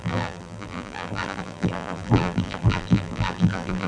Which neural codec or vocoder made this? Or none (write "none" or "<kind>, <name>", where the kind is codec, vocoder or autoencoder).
vocoder, BigVGAN v2